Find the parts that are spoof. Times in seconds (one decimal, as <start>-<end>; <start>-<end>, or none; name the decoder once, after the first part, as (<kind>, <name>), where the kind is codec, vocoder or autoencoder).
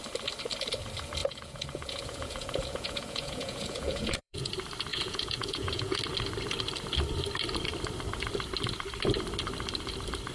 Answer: 1.2-4.5 (vocoder, Vocos); 4.9-6.0